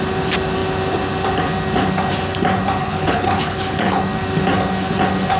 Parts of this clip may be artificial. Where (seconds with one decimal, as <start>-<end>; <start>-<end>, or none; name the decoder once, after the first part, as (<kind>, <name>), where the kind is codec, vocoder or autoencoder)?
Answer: 2.8-4.0 (codec, HILCodec)